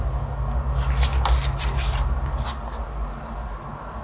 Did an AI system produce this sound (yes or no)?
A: no